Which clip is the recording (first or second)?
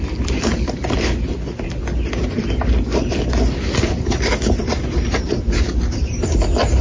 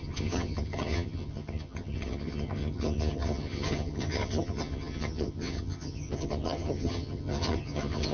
first